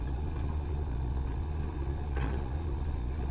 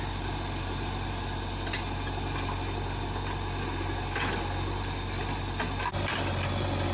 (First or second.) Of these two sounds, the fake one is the first